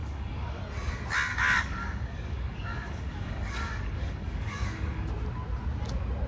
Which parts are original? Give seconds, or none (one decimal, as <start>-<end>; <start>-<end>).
0.6-1.3; 5.1-6.3